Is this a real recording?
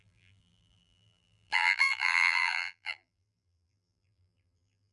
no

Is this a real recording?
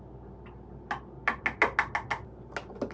yes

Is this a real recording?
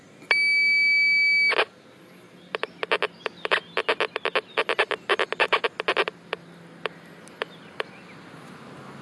yes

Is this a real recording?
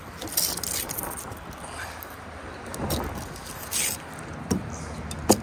yes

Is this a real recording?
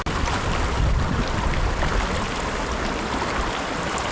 yes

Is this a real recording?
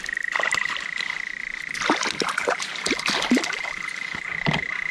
yes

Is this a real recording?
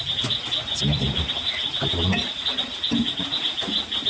yes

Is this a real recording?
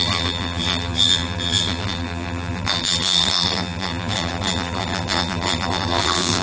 no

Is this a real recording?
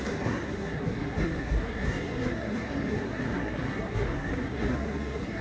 no